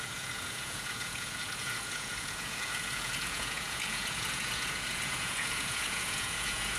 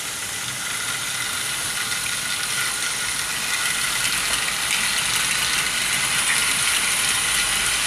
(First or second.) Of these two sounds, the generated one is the first